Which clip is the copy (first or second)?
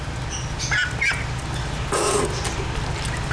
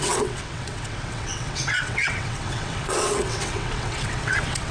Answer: second